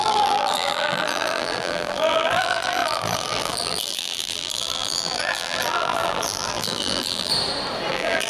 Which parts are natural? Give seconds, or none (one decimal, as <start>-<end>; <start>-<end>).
7.3-7.9